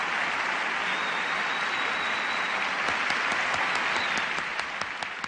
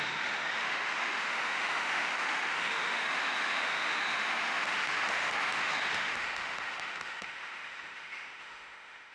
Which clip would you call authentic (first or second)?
first